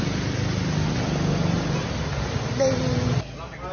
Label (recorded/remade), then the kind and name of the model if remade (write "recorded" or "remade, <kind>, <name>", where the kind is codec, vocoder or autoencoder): recorded